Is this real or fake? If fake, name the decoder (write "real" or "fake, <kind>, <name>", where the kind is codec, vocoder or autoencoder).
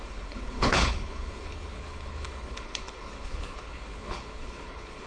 fake, codec, HILCodec